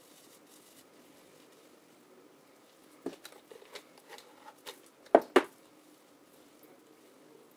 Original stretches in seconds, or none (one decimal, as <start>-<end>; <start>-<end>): 0.0-7.6